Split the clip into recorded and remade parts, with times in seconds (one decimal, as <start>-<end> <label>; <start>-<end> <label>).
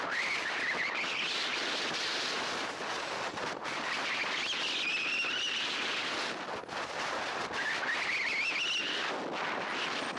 0.0-10.2 recorded